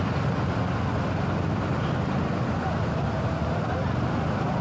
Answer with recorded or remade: recorded